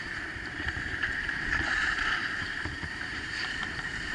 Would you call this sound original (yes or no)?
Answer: no